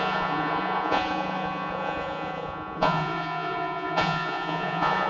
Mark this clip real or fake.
fake